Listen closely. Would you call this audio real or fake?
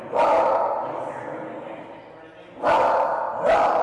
real